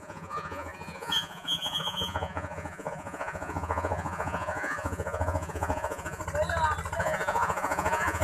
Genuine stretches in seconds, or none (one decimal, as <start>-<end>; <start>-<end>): 6.2-7.0